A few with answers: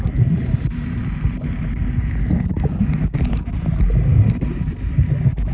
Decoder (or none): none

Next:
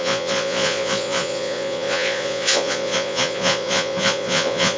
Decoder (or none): vocoder, Vocos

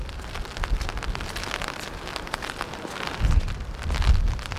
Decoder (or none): none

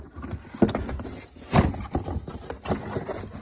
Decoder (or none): none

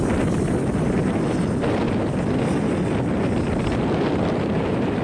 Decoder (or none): none